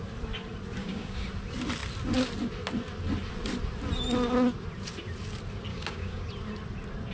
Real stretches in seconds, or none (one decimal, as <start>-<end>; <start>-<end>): 0.0-0.8; 1.3-5.7; 6.3-7.1